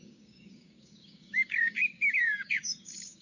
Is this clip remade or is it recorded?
remade